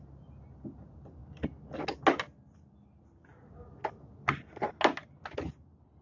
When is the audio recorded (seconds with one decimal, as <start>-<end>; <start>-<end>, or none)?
0.0-6.0